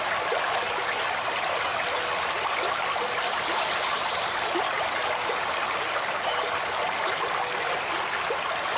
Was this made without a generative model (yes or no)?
yes